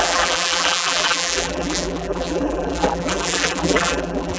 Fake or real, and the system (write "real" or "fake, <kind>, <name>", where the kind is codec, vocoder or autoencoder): fake, vocoder, BigVGAN v2